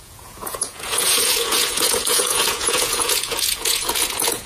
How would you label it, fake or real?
fake